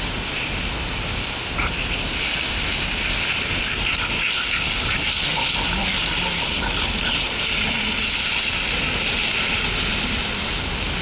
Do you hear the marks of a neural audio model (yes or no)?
no